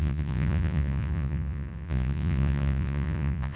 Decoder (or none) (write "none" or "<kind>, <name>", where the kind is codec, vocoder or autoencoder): vocoder, Vocos